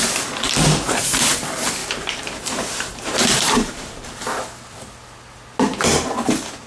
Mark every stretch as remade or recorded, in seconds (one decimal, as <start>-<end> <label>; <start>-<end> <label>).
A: 0.0-1.8 recorded; 1.8-4.4 remade; 4.4-6.7 recorded